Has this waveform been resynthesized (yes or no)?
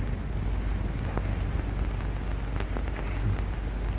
no